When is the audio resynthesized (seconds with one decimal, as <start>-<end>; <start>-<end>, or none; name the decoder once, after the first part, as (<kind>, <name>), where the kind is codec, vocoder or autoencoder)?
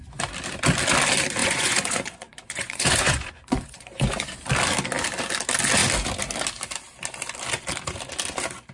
1.4-4.1 (vocoder, Vocos)